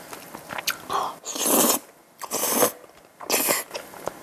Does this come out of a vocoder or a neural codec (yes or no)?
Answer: no